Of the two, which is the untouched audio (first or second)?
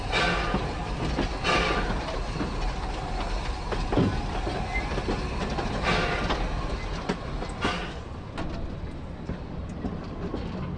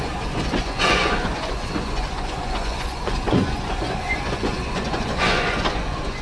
first